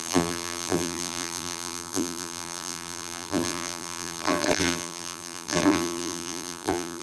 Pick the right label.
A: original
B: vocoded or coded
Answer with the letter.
B